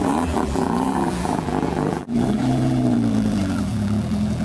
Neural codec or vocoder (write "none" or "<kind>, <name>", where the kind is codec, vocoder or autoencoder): vocoder, BigVGAN v2